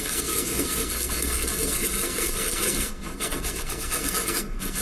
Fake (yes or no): yes